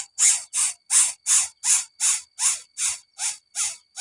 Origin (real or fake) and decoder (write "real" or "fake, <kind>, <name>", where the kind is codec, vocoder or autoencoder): real